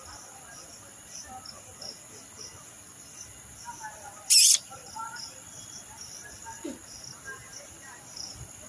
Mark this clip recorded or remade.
recorded